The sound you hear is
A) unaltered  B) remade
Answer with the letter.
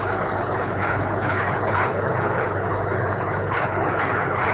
B